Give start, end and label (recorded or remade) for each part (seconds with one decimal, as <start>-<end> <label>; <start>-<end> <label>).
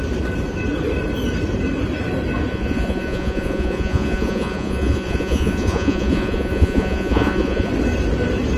0.0-2.5 recorded; 2.5-7.7 remade; 7.7-8.6 recorded